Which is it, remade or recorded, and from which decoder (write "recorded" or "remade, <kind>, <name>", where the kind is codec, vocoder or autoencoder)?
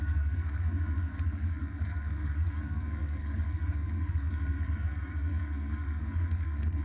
remade, codec, SNAC